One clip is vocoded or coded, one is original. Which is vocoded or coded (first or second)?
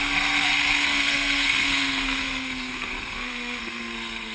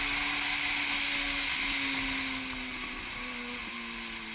first